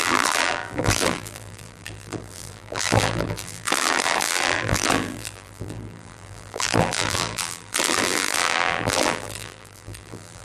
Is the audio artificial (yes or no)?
yes